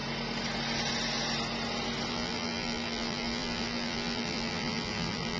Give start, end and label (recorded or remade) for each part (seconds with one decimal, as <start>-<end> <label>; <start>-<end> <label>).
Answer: 0.0-2.1 recorded; 2.1-5.4 remade